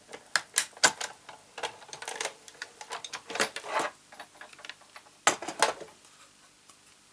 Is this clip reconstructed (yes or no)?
no